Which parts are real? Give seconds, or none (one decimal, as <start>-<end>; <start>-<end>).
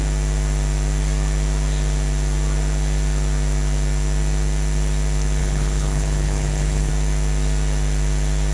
0.0-5.4; 6.9-8.5